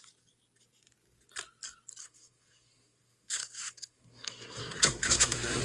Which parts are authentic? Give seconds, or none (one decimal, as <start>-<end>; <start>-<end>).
0.0-2.0